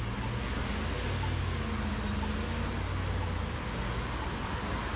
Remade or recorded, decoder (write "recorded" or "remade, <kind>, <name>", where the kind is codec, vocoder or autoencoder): recorded